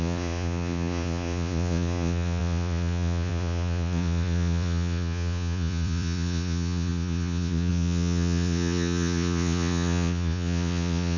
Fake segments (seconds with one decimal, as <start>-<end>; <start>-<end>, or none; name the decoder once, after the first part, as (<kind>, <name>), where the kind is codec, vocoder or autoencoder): 0.0-11.2 (vocoder, Vocos)